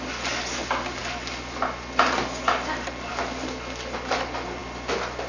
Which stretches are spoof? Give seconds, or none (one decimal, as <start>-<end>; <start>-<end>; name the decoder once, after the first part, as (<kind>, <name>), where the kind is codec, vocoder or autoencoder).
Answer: none

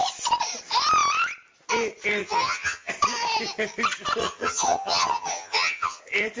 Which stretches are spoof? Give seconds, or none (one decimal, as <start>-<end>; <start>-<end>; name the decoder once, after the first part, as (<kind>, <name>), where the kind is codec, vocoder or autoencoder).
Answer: 2.2-2.9 (vocoder, HiFi-GAN); 4.2-6.0

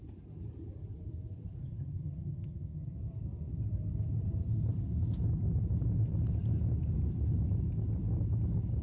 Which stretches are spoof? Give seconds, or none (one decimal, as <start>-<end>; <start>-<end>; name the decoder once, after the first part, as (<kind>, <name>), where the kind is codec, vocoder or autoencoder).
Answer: 1.6-2.9 (vocoder, HiFi-GAN)

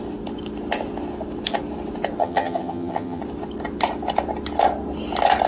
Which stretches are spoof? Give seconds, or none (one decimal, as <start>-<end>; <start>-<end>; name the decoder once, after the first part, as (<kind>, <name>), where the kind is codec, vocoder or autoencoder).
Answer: 2.2-3.2 (vocoder, HiFi-GAN)

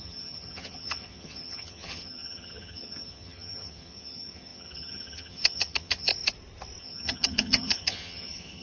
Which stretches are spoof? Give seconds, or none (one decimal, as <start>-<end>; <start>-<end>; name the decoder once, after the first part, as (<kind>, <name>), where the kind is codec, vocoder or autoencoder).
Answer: 0.0-6.1 (vocoder, HiFi-GAN); 6.8-8.6

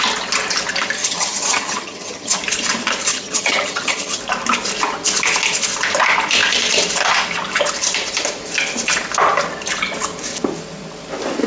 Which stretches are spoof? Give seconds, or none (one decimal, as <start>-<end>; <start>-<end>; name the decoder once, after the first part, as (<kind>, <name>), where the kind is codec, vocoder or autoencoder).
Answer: 1.0-2.4 (vocoder, HiFi-GAN); 3.1-4.2